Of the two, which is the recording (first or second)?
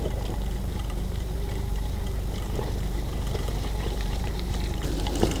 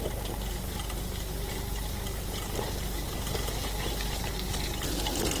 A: second